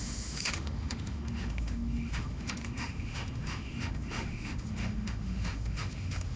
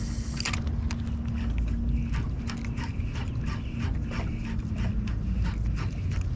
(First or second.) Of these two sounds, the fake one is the first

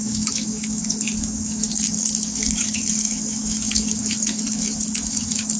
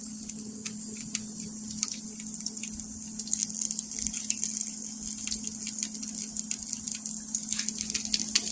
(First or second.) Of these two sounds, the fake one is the first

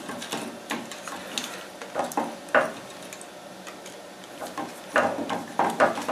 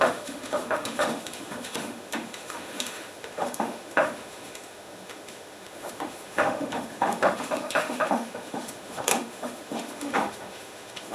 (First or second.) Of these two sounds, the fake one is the second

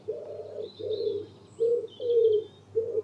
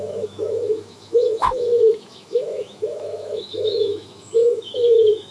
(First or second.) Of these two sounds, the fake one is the second